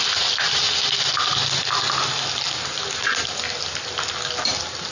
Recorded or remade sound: recorded